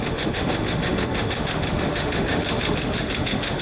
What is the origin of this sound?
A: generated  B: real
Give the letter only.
A